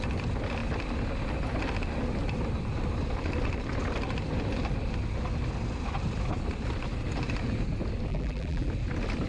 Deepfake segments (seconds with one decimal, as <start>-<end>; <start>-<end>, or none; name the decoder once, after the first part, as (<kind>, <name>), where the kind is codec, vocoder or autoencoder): 8.1-8.7 (vocoder, BigVGAN v2)